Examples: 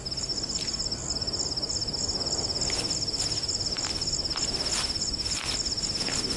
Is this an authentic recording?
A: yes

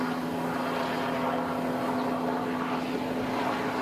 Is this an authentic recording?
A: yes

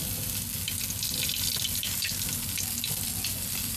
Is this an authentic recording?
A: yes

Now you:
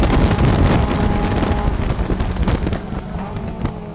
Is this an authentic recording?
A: yes